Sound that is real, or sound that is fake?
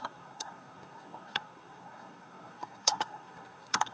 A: fake